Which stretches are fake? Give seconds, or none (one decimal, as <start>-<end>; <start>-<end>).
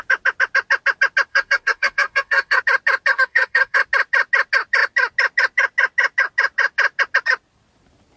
1.3-2.6; 3.1-3.8